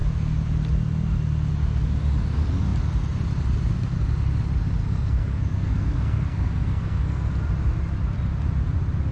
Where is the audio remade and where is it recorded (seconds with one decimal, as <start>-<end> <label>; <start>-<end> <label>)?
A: 0.0-4.8 recorded; 4.8-7.3 remade; 7.3-9.1 recorded